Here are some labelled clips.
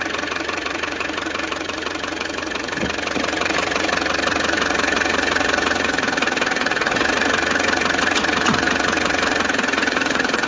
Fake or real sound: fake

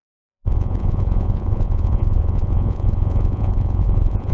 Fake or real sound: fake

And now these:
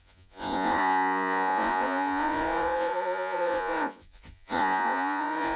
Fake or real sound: fake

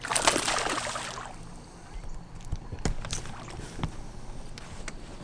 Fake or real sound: real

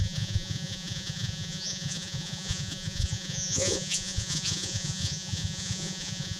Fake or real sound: fake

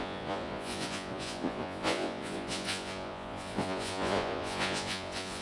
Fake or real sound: fake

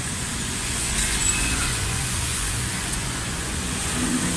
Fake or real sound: fake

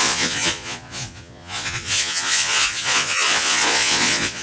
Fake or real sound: fake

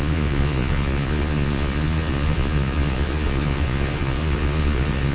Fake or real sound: fake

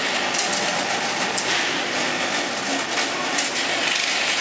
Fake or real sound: real